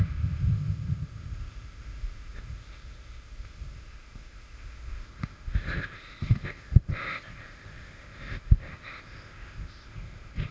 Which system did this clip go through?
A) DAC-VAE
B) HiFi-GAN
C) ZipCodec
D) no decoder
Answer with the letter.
C